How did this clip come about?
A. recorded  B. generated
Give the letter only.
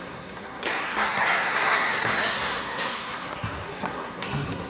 B